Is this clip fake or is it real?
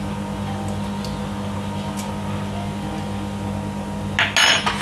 real